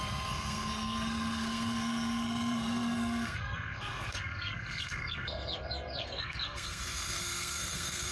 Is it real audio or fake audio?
fake